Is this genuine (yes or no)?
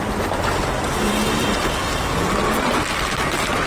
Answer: yes